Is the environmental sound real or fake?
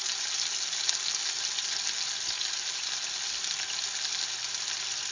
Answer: real